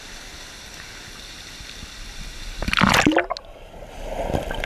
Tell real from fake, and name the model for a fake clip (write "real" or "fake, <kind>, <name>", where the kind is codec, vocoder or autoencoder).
real